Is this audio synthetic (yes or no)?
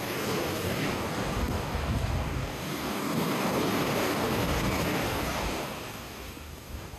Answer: yes